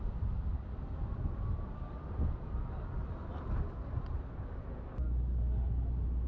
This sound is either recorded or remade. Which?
recorded